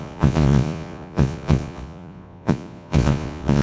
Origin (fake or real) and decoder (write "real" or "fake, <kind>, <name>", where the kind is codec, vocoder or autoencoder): fake, vocoder, Vocos